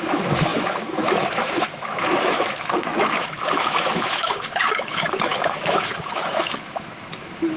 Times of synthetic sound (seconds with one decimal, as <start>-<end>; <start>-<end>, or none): 0.0-7.6